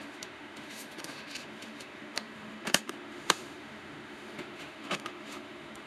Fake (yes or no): yes